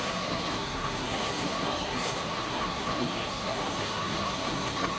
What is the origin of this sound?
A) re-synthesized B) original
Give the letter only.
A